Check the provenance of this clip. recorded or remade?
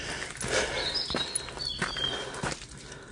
recorded